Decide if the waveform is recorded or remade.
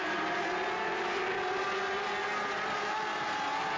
recorded